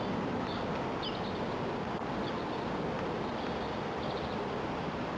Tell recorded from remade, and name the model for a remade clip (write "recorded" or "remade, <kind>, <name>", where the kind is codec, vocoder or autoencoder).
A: recorded